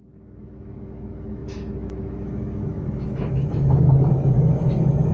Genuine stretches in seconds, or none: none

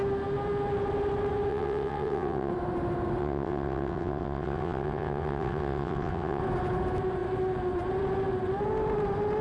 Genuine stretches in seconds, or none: 0.0-1.5; 2.5-3.2; 6.4-9.4

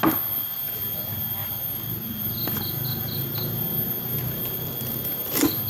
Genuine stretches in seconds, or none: 0.0-5.7